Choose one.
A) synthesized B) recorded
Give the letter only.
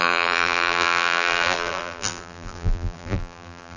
A